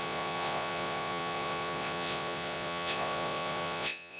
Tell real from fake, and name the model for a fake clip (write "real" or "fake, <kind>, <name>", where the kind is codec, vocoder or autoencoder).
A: fake, vocoder, Vocos